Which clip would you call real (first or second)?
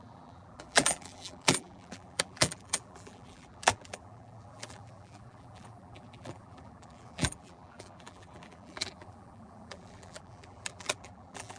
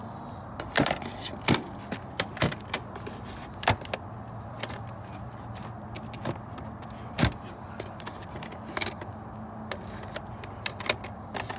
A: second